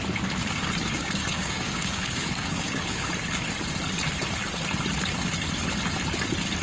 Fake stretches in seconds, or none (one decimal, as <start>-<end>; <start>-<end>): 1.0-3.1